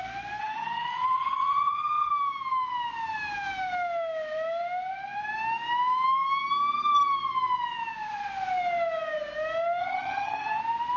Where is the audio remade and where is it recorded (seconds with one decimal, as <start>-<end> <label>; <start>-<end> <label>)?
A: 0.0-0.4 recorded; 0.4-2.1 remade; 2.1-9.8 recorded; 9.8-10.6 remade; 10.6-11.0 recorded